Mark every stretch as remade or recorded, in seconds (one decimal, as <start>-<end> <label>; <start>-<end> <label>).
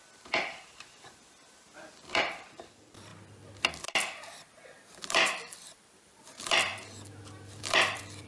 0.0-3.1 remade; 3.1-5.1 recorded; 5.1-6.7 remade; 6.7-7.6 recorded; 7.6-8.3 remade